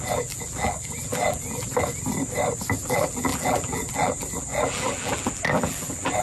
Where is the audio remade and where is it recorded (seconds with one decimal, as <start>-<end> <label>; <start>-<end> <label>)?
0.0-1.7 remade; 1.7-2.8 recorded; 2.8-6.2 remade